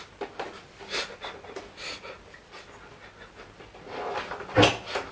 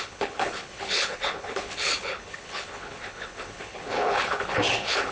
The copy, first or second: second